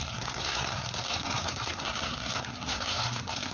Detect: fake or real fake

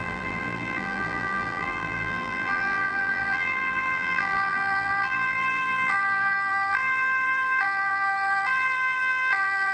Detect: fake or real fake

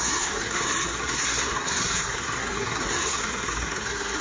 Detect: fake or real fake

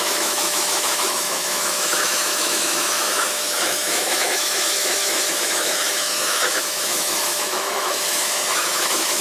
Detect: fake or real fake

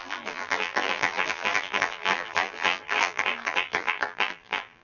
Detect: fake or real fake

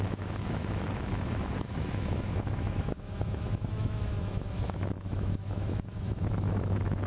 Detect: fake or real fake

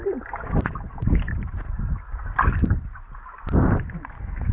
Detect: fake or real real